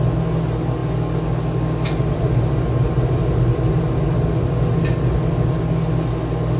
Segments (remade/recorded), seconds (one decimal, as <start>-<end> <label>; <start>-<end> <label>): 0.0-6.6 recorded